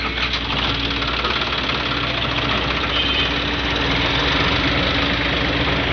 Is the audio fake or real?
real